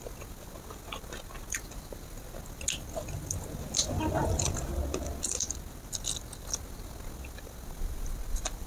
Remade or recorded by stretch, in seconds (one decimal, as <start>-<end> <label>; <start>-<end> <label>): 0.0-8.7 recorded